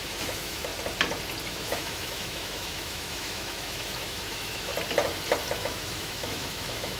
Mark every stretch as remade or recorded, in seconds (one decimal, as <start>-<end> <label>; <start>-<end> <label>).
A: 0.0-0.7 remade; 0.7-1.5 recorded; 1.5-4.7 remade; 4.7-5.5 recorded; 5.5-7.0 remade